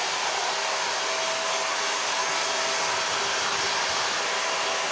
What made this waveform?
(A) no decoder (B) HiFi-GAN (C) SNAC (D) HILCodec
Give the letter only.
A